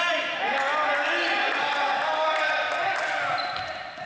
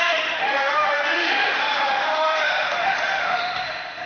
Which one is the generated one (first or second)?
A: second